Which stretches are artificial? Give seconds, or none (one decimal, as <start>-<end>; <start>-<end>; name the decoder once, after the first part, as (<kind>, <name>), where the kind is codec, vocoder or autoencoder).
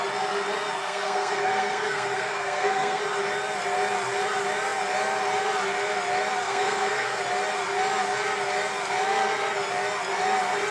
0.8-3.0 (codec, SNAC); 6.4-7.2